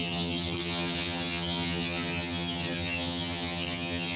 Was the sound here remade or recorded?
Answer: remade